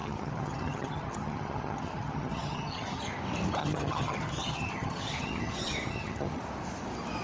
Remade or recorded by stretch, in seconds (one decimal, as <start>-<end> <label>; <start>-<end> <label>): 0.0-3.1 remade; 3.1-3.6 recorded; 3.6-6.4 remade; 6.4-7.2 recorded